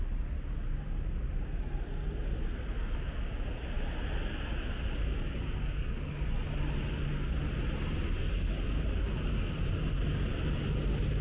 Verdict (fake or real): real